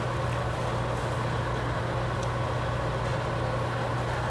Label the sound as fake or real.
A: real